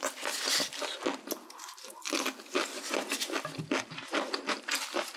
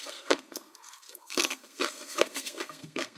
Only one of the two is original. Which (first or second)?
first